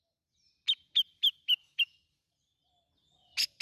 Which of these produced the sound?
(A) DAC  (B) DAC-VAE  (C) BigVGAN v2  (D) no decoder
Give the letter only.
D